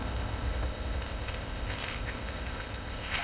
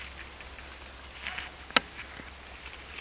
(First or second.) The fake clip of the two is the first